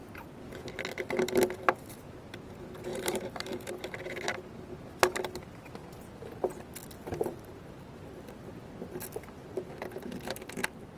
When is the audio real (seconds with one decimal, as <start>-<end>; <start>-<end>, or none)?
0.0-2.9; 3.7-11.0